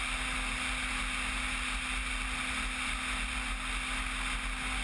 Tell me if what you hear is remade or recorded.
recorded